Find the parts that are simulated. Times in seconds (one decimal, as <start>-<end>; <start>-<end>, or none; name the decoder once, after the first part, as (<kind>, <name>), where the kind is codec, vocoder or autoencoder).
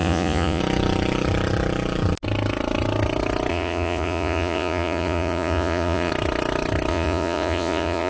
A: 0.0-0.6 (vocoder, Vocos); 3.5-6.1; 6.9-8.1